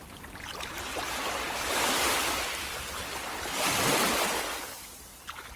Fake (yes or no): no